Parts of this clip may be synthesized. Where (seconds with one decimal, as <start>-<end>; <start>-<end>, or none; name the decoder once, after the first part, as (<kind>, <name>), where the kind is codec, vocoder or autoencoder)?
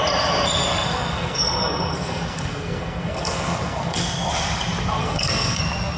0.7-4.3 (codec, SNAC); 5.0-5.6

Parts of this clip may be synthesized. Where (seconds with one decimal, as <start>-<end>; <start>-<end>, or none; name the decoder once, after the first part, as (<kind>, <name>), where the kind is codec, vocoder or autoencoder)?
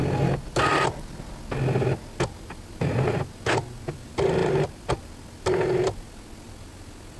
2.0-2.6 (vocoder, BigVGAN v2)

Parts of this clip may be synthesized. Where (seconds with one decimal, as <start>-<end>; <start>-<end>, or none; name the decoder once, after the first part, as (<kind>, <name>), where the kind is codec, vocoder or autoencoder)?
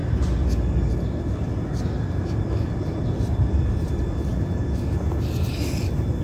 none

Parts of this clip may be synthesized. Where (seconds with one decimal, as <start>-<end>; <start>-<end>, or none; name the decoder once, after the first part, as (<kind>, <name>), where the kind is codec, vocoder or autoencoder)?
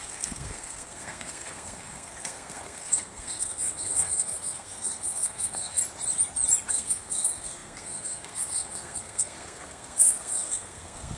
0.0-5.8 (codec, SNAC); 6.7-11.2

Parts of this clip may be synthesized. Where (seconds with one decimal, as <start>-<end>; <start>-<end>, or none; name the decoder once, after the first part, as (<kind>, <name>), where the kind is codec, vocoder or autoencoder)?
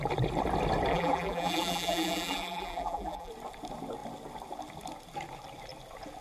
0.9-3.3 (vocoder, BigVGAN v2)